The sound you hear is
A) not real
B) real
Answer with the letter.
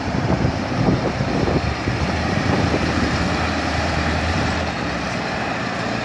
A